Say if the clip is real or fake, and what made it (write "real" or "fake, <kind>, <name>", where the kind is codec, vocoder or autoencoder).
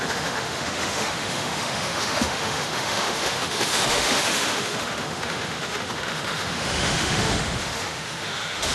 fake, autoencoder, DAC-VAE